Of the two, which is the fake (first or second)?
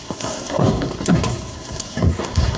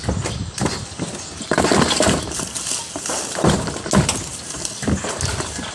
first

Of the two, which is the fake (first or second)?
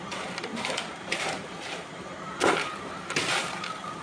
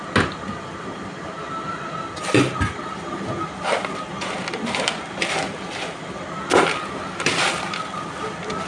first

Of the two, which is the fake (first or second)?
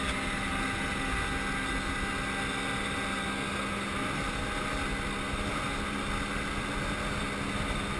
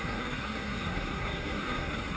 second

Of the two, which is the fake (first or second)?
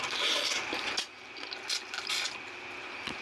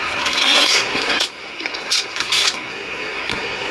second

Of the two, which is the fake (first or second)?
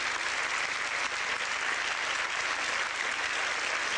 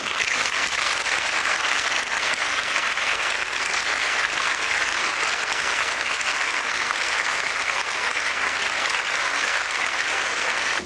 second